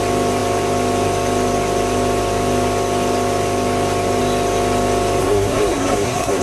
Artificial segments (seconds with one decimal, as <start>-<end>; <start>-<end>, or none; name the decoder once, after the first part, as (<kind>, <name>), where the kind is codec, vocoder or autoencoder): 5.2-6.4 (codec, SNAC)